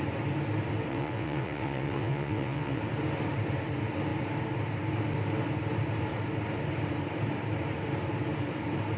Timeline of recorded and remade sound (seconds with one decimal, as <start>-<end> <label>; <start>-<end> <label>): 0.0-0.9 recorded; 0.9-2.8 remade; 2.8-9.0 recorded